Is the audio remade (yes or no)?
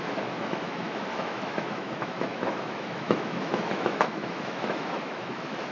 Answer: yes